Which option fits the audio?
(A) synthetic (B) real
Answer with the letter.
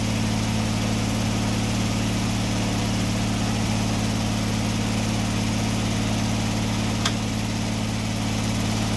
B